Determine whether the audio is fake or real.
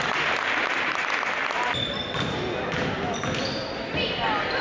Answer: real